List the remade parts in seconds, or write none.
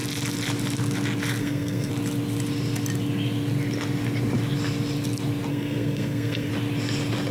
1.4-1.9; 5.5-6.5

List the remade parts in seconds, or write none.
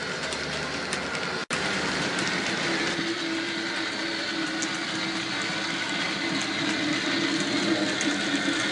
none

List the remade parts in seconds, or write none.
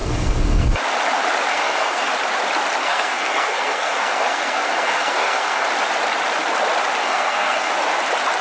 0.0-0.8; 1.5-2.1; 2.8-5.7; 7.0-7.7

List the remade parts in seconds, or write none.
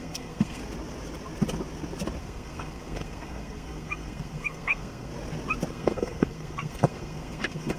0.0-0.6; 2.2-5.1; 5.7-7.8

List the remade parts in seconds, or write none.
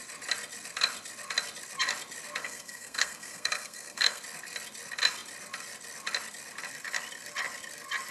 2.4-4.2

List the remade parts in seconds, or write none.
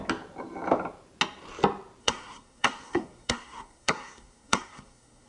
2.0-5.3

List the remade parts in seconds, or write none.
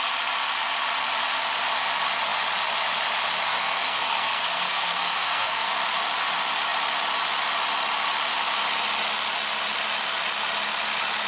3.5-5.7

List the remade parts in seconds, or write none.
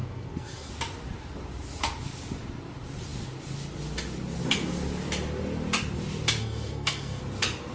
0.0-0.7; 6.4-7.2